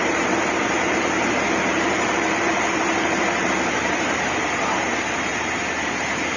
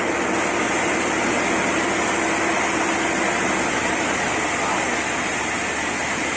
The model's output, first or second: first